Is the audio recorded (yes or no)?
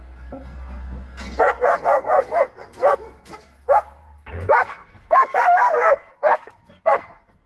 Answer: no